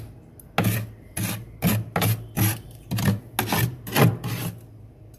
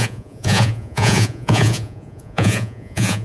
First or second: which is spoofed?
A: second